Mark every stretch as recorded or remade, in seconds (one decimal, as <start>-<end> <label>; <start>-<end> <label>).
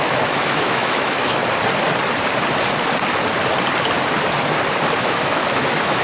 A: 0.0-1.4 remade; 1.4-5.0 recorded; 5.0-6.0 remade